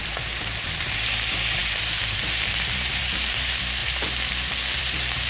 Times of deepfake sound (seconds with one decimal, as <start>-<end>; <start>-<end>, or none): 0.0-3.8; 4.8-5.3